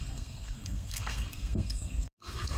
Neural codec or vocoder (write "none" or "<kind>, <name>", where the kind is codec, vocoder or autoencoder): codec, SNAC